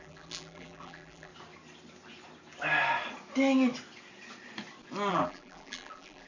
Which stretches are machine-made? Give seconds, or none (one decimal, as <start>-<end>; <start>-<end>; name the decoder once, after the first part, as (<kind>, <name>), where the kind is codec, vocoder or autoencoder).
0.0-1.3 (vocoder, BigVGAN v2); 5.1-6.3